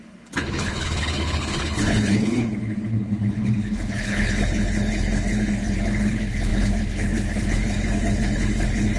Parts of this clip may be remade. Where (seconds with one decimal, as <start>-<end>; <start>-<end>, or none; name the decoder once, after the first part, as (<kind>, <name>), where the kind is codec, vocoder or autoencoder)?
0.0-9.0 (codec, HILCodec)